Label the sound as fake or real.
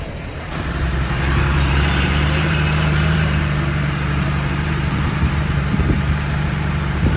fake